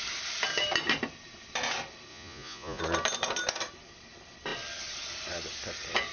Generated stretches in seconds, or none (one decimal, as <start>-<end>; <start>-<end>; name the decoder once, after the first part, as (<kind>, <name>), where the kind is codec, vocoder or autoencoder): 2.1-2.8 (vocoder, Vocos)